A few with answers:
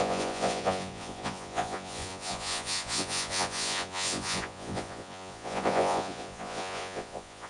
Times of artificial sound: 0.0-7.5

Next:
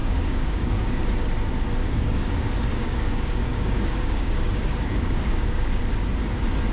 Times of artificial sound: 0.0-1.0; 1.8-5.8

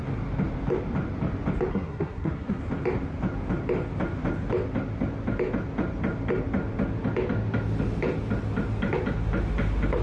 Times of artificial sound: 1.7-2.6

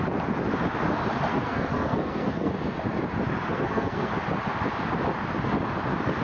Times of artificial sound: 1.3-2.5; 3.5-4.1

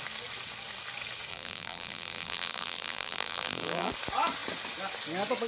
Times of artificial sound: 1.3-3.9